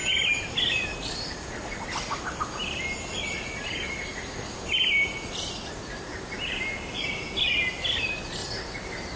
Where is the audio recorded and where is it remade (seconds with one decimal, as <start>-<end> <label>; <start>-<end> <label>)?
0.0-9.2 recorded

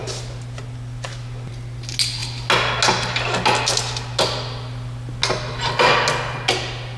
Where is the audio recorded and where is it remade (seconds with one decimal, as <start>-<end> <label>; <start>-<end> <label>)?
0.0-7.0 recorded

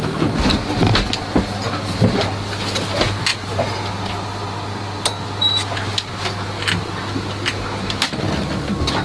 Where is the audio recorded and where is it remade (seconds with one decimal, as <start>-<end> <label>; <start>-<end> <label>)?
0.0-9.0 recorded

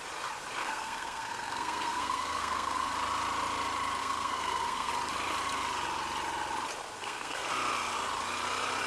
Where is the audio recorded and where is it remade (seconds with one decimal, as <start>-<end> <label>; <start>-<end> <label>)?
0.0-0.6 recorded; 0.6-2.9 remade; 2.9-4.0 recorded; 4.0-4.9 remade; 4.9-7.0 recorded; 7.0-7.5 remade; 7.5-8.9 recorded